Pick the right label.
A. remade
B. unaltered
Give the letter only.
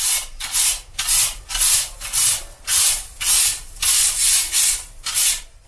A